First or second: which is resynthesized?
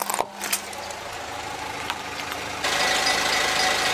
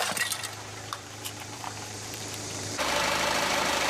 second